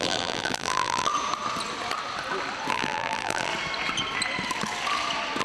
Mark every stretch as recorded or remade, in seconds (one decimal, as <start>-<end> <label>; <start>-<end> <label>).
0.0-1.1 remade; 1.1-2.7 recorded; 2.7-3.5 remade; 3.5-5.4 recorded